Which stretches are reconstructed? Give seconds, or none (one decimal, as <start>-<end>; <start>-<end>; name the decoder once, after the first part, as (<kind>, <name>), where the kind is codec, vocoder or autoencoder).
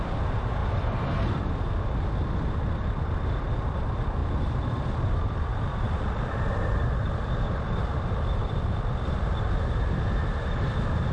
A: 0.6-1.4 (vocoder, BigVGAN v2); 4.2-9.1